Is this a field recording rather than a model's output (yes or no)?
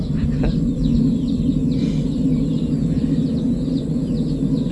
yes